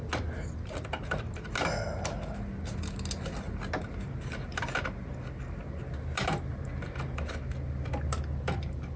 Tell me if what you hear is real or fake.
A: real